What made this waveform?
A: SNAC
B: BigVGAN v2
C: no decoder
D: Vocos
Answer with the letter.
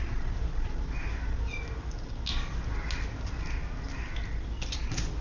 C